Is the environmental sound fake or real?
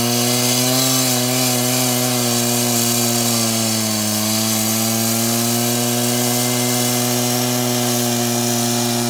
real